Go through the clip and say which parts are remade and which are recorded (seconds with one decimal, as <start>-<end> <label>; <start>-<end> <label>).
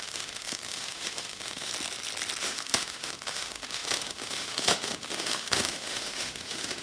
0.0-1.7 remade; 1.7-2.4 recorded; 2.4-6.8 remade